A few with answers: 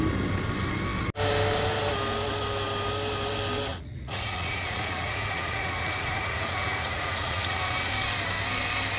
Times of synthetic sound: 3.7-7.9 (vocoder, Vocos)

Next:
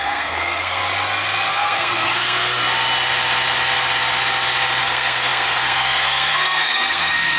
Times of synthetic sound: 0.0-0.8 (codec, SNAC); 1.5-2.6; 4.8-7.4

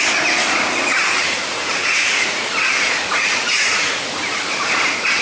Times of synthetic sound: 1.0-4.1 (vocoder, Vocos)

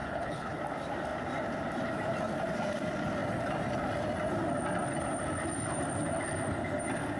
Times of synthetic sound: 0.0-0.6 (codec, HILCodec)

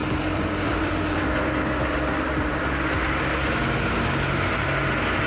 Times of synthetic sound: 0.0-3.2 (vocoder, BigVGAN v2)